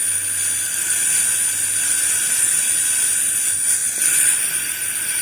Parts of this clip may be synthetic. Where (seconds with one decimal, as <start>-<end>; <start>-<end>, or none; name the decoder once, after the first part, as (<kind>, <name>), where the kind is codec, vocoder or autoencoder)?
none